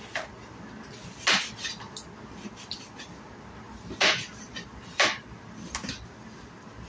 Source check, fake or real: real